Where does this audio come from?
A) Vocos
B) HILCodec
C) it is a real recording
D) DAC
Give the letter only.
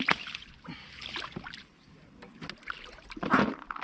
C